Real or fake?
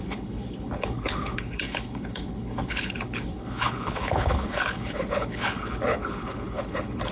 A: fake